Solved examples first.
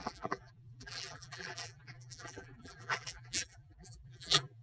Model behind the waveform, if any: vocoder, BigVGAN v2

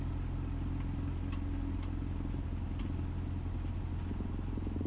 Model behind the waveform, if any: none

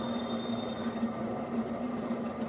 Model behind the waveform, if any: vocoder, BigVGAN v2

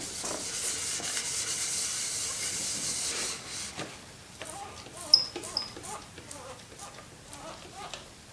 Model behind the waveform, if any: none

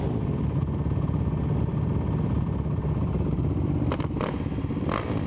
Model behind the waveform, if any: none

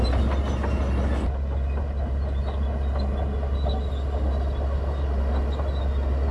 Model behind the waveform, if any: none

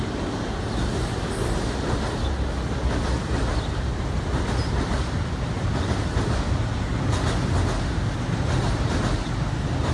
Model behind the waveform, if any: none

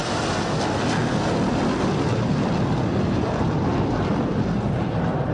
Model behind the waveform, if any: vocoder, BigVGAN v2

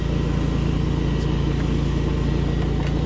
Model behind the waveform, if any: none